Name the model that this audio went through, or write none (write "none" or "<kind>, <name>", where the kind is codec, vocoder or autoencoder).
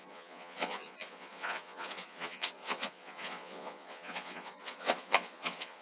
vocoder, Vocos